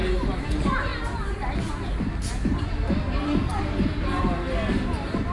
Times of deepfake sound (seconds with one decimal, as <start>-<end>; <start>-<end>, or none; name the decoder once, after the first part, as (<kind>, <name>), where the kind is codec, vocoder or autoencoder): none